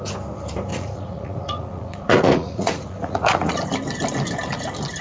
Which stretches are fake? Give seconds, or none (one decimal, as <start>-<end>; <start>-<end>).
0.7-3.7